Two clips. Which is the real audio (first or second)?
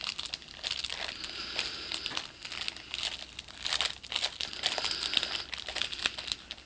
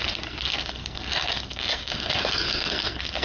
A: first